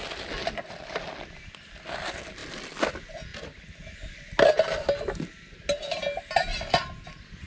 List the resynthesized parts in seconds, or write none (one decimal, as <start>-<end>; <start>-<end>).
none

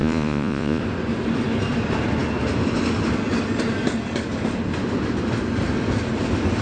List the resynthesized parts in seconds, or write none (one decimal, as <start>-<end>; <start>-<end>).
0.0-0.8

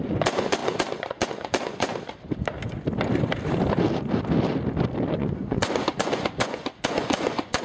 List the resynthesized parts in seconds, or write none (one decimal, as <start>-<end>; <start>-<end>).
0.0-1.9; 5.1-7.6

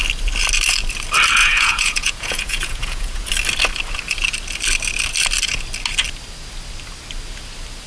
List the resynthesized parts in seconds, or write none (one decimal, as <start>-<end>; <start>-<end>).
1.4-3.3